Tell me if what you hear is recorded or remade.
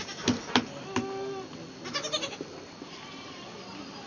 recorded